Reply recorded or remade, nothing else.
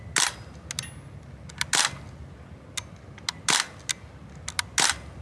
recorded